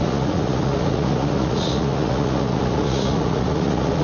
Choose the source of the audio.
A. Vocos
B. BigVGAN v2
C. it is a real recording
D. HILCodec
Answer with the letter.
A